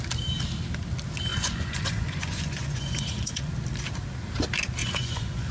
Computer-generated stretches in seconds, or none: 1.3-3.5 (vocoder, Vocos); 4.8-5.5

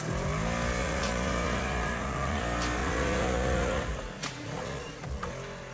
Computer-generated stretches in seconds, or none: 0.8-2.4 (vocoder, Vocos); 2.8-3.8; 4.2-5.3

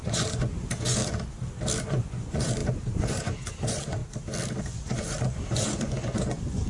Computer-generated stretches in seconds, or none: 0.0-1.0 (vocoder, Vocos); 1.8-4.0; 4.6-6.7

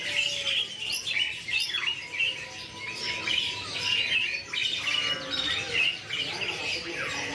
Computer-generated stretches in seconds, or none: none

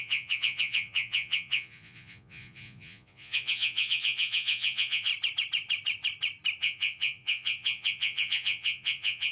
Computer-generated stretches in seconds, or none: 0.0-5.1 (vocoder, Vocos); 6.6-9.3